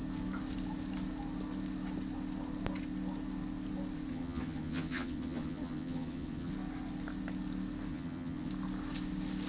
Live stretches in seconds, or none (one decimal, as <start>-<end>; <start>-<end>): 0.0-4.1; 6.5-7.9; 8.5-9.5